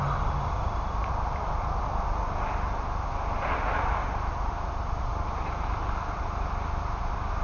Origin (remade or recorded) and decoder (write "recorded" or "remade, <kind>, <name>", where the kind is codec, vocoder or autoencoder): recorded